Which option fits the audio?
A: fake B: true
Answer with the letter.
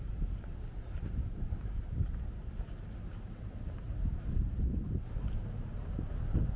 A